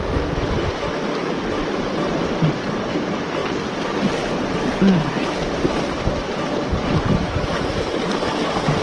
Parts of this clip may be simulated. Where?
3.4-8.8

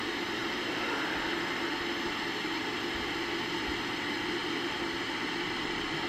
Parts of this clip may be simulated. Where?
none